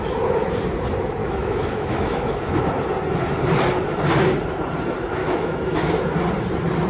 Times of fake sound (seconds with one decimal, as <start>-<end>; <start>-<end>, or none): 1.2-2.7; 5.2-6.0